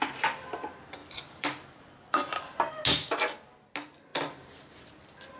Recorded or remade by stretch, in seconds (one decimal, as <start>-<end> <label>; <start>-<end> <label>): 0.0-1.0 recorded; 1.0-2.7 remade; 2.7-4.1 recorded; 4.1-4.9 remade; 4.9-5.4 recorded